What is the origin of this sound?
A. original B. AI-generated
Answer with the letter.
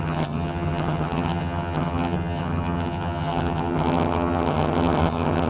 B